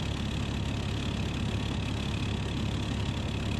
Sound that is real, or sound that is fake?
real